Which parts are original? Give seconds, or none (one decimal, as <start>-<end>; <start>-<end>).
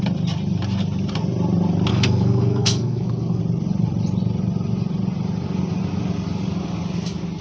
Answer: 0.0-1.9; 3.4-7.4